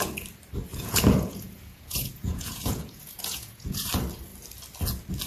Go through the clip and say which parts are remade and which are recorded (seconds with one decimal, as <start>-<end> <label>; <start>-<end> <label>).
0.0-0.7 recorded; 0.7-3.9 remade; 3.9-5.3 recorded